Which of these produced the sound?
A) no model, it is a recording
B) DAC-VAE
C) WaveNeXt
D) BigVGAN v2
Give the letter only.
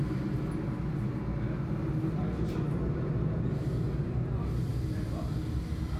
A